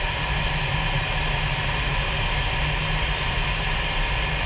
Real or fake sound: real